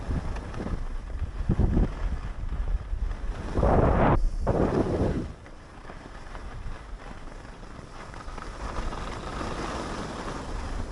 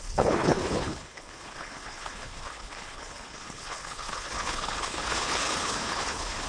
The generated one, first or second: second